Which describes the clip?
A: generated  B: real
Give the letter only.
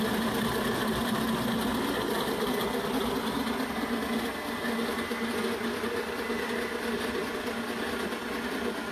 B